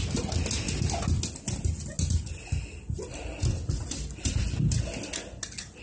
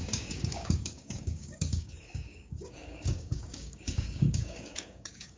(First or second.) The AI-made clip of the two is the second